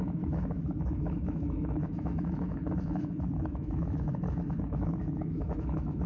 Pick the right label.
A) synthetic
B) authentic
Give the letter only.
A